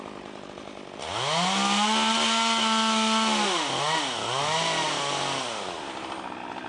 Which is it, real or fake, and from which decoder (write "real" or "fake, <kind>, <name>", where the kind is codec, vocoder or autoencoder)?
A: real